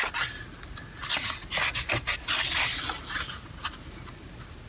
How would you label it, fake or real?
real